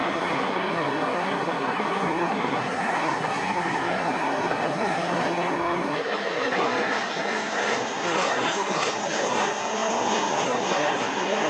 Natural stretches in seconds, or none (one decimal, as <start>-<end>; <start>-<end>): none